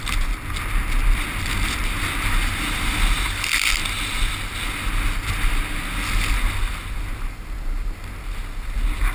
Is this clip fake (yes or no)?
no